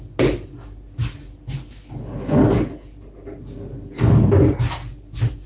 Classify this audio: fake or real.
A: real